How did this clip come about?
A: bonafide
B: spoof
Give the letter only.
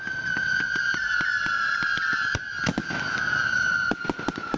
A